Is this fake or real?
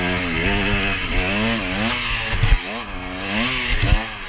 real